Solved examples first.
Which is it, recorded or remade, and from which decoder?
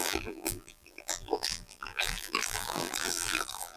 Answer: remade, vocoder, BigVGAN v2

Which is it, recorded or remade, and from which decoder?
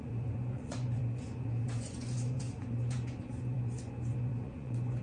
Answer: remade, vocoder, Vocos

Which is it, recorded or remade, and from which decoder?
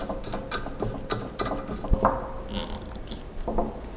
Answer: recorded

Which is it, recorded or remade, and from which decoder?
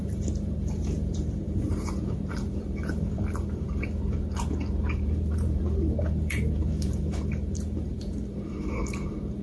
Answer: remade, vocoder, BigVGAN v2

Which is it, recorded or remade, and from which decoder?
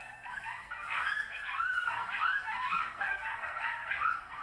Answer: remade, codec, SNAC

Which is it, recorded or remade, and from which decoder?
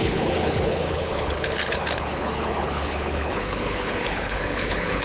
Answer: remade, codec, HILCodec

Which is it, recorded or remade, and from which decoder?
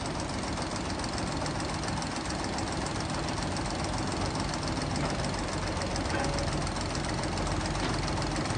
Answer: recorded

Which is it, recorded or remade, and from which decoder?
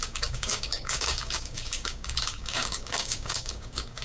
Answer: remade, codec, DAC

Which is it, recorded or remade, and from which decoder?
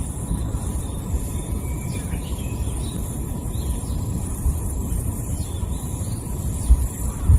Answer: remade, vocoder, BigVGAN v2